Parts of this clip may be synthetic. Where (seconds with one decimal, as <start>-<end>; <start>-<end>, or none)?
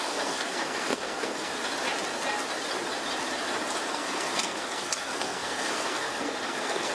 0.0-1.5; 3.9-6.9